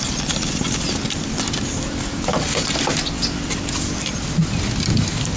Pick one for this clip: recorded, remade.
recorded